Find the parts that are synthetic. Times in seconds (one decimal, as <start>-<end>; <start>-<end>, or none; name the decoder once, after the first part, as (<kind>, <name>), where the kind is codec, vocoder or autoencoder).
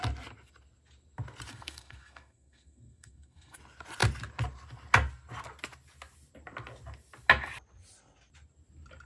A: 1.5-3.6 (codec, SNAC)